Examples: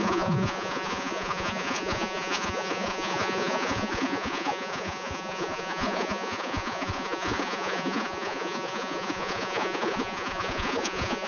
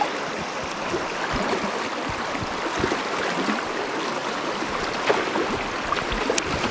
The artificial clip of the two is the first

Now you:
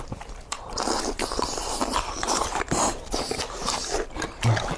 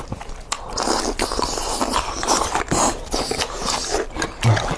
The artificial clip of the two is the first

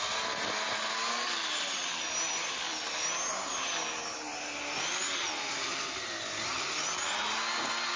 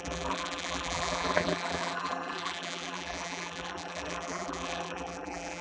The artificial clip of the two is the second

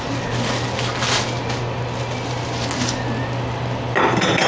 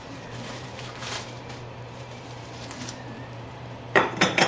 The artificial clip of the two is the second